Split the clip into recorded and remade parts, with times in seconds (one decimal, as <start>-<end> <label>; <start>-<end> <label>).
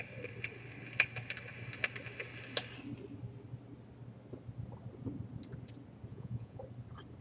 0.0-6.1 recorded; 6.1-6.6 remade; 6.6-7.2 recorded